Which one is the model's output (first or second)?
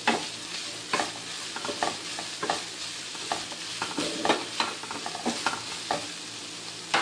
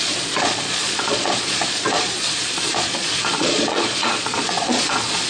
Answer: second